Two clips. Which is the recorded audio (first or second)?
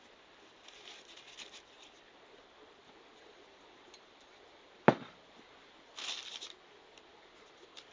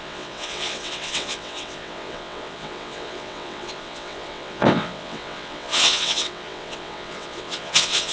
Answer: first